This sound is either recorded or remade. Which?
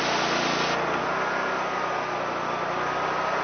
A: recorded